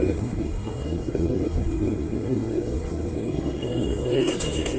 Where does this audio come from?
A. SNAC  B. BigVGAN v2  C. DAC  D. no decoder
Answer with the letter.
A